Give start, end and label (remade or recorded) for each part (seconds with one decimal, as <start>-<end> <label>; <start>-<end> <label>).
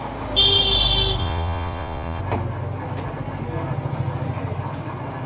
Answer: 0.0-1.2 recorded; 1.2-2.2 remade; 2.2-5.3 recorded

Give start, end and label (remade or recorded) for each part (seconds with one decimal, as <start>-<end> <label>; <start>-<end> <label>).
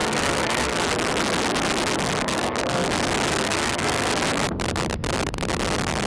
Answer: 0.0-0.8 remade; 0.8-2.2 recorded; 2.2-2.9 remade; 2.9-3.3 recorded; 3.3-4.1 remade; 4.1-6.1 recorded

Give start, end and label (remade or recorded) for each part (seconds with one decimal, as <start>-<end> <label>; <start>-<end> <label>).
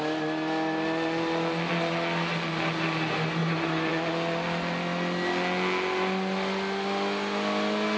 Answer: 0.0-3.4 recorded; 3.4-3.9 remade; 3.9-8.0 recorded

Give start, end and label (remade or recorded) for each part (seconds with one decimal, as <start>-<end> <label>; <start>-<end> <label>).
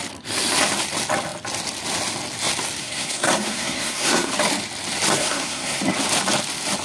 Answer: 0.0-2.8 recorded; 2.8-4.3 remade; 4.3-5.2 recorded; 5.2-5.8 remade; 5.8-6.8 recorded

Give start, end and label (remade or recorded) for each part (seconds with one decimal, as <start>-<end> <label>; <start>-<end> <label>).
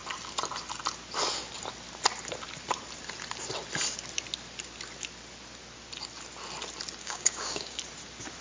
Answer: 0.0-7.0 recorded; 7.0-7.8 remade; 7.8-8.4 recorded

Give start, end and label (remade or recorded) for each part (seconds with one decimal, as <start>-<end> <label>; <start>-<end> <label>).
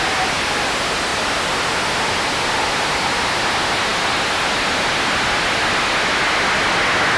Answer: 0.0-7.2 recorded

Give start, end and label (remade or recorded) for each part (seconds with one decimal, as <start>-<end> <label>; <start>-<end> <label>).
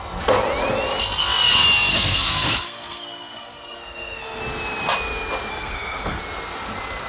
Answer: 0.0-1.9 recorded; 1.9-4.4 remade; 4.4-5.5 recorded; 5.5-6.2 remade; 6.2-7.1 recorded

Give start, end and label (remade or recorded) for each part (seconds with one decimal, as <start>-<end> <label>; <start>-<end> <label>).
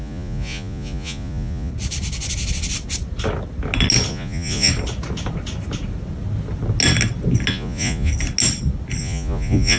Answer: 0.0-1.7 remade; 1.7-4.1 recorded; 4.1-4.7 remade; 4.7-7.5 recorded; 7.5-8.1 remade; 8.1-9.0 recorded; 9.0-9.8 remade